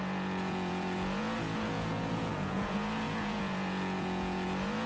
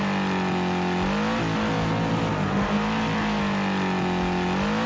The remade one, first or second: first